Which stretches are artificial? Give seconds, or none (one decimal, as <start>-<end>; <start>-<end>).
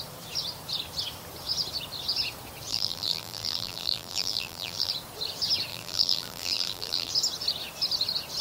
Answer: 2.7-4.9; 5.7-7.1